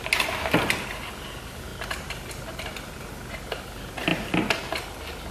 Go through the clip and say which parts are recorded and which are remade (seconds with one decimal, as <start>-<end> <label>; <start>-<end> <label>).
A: 0.0-5.3 recorded